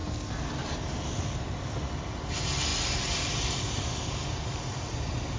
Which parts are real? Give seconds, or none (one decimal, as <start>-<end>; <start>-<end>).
0.0-5.4